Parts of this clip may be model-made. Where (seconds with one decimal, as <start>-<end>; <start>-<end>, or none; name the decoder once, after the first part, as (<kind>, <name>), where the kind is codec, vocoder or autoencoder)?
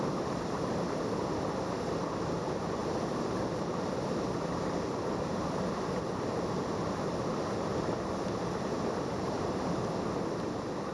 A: none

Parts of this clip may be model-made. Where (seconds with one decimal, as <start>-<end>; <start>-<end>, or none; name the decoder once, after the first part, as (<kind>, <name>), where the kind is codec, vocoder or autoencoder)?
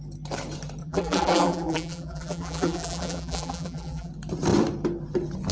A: 0.8-4.1 (vocoder, BigVGAN v2)